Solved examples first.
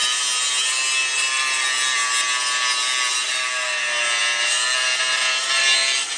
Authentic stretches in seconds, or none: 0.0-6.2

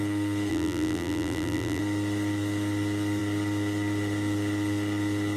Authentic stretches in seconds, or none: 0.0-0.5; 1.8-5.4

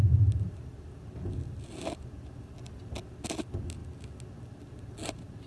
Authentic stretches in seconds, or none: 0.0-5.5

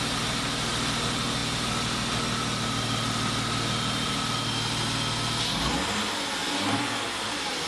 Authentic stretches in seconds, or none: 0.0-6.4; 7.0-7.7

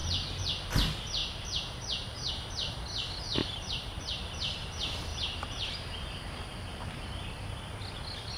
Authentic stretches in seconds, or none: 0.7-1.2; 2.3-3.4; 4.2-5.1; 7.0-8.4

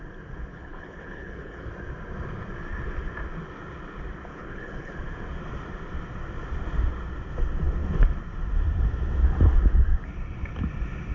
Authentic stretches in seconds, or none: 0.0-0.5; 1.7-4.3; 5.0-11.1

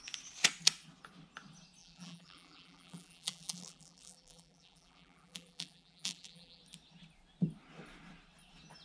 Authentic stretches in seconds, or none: 0.0-1.8; 6.6-8.8

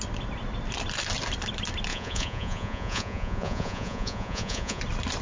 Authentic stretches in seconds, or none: 0.0-1.9; 4.8-5.2